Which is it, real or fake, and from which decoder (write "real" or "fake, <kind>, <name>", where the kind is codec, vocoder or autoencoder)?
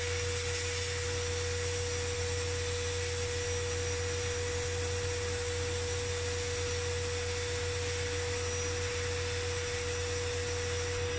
real